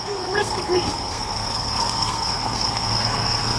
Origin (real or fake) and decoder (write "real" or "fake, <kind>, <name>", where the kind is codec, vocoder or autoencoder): fake, codec, SNAC